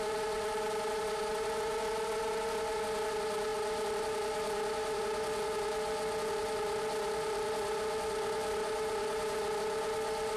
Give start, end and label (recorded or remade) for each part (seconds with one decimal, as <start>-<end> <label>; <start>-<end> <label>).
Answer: 0.0-10.4 recorded